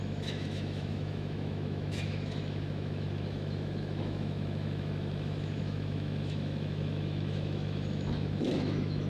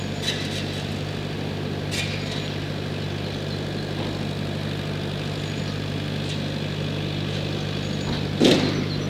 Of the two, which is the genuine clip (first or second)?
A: second